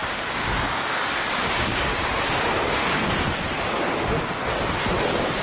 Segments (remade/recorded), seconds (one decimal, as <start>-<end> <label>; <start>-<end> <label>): 0.0-2.8 remade; 2.8-5.4 recorded